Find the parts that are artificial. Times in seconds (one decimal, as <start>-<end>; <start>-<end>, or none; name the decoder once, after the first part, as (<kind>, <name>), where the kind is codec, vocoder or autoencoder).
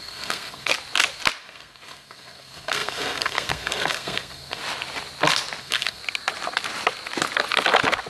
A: 0.0-0.7 (codec, SNAC); 1.4-4.6; 5.6-6.0